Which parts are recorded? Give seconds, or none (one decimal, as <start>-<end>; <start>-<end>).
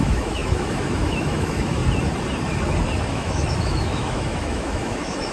1.8-3.1